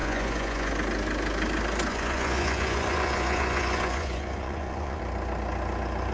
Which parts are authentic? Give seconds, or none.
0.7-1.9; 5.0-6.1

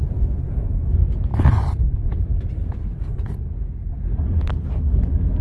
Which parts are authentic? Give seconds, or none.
0.0-5.4

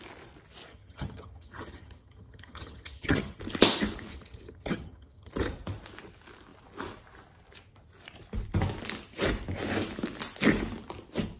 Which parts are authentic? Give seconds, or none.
0.0-0.7; 3.4-4.1; 5.3-11.4